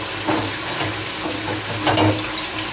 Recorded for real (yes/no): yes